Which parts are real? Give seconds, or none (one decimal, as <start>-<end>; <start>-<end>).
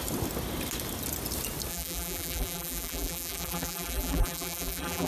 0.0-1.7